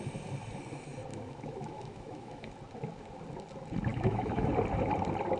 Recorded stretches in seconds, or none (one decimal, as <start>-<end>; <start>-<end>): 0.0-1.1; 2.5-3.9; 4.5-5.4